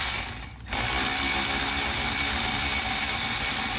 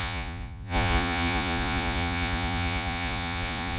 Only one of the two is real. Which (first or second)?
first